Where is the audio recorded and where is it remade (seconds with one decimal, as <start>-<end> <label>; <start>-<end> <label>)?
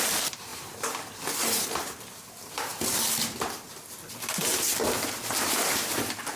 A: 0.0-0.5 recorded; 0.5-1.3 remade; 1.3-4.5 recorded; 4.5-5.7 remade; 5.7-6.4 recorded